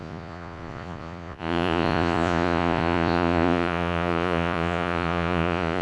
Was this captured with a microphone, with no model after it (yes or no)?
no